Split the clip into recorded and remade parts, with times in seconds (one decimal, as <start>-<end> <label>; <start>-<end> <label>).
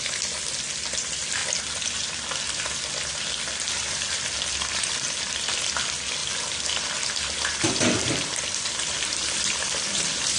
0.0-10.4 recorded